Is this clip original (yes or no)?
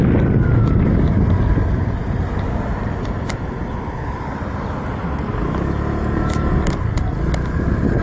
yes